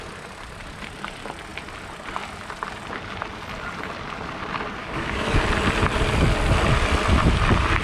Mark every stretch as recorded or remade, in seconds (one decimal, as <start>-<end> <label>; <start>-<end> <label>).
0.0-4.8 recorded; 4.8-5.4 remade; 5.4-7.8 recorded